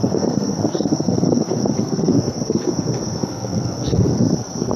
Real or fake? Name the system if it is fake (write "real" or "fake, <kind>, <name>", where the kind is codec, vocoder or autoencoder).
fake, codec, SNAC